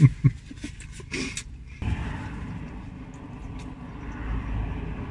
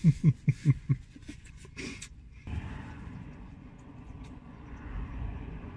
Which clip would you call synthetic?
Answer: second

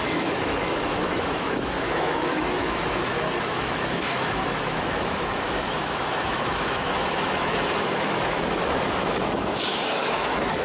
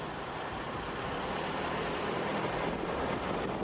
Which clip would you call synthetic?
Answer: first